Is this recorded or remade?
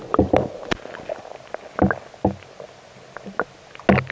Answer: recorded